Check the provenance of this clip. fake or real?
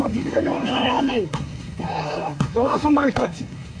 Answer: fake